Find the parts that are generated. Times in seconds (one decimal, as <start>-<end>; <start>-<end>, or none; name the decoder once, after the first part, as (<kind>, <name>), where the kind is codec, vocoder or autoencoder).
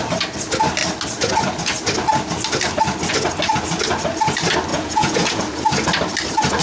4.7-5.4 (vocoder, Vocos)